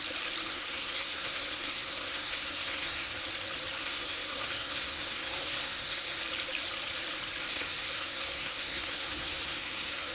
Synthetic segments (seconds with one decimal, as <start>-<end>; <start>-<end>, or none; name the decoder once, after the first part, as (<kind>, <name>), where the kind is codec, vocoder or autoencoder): 0.5-3.1 (codec, SNAC); 3.8-6.2; 7.5-10.1